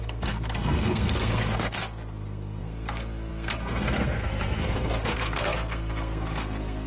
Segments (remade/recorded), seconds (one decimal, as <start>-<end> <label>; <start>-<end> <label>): 0.0-6.9 remade